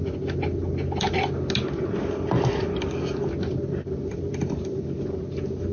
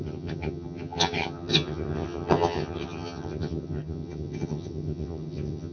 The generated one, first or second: second